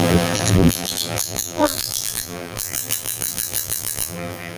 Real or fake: fake